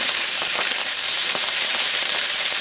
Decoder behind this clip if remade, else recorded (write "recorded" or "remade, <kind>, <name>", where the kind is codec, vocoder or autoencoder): remade, vocoder, BigVGAN v2